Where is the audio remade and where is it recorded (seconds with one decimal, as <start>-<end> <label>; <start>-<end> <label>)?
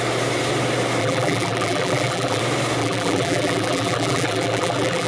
0.0-1.0 recorded; 1.0-2.4 remade; 2.4-2.8 recorded; 2.8-5.1 remade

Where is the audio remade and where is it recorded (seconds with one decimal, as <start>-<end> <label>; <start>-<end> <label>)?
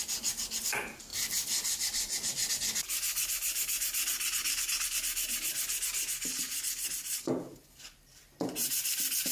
0.0-9.3 recorded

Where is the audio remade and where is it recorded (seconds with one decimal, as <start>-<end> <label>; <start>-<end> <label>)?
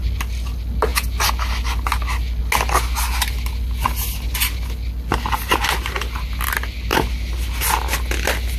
0.0-8.6 recorded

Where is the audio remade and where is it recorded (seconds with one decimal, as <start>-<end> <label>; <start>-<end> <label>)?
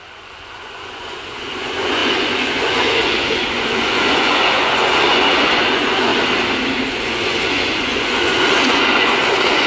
0.0-6.1 remade; 6.1-6.9 recorded; 6.9-9.7 remade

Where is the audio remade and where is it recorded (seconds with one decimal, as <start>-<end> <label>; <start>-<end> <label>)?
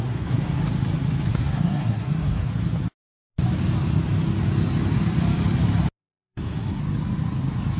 0.0-0.6 remade; 0.6-1.3 recorded; 1.3-2.5 remade; 2.5-6.0 recorded; 6.0-6.8 remade; 6.8-7.8 recorded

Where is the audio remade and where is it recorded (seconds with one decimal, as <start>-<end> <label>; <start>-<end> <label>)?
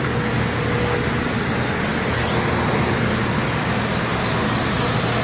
0.0-5.2 recorded